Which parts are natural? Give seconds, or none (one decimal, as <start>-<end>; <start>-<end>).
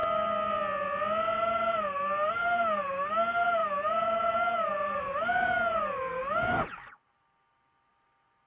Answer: 0.0-2.3; 6.2-7.9